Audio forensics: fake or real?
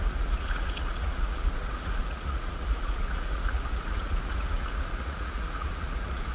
fake